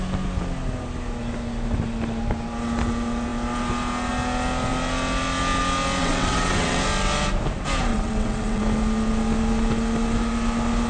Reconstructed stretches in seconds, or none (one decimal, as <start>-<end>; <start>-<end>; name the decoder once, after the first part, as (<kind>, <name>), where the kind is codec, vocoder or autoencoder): 6.0-6.8 (vocoder, WaveNeXt); 7.9-8.6